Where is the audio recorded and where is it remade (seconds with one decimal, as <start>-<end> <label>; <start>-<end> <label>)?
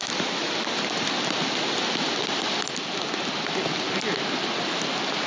0.0-5.3 recorded